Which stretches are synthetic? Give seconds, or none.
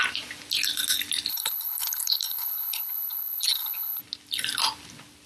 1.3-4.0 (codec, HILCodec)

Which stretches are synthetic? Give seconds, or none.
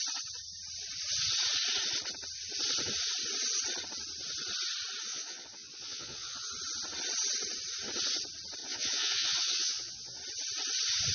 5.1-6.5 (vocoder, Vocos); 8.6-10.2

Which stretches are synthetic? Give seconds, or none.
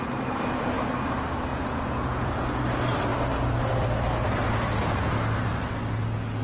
1.5-2.3 (vocoder, Vocos)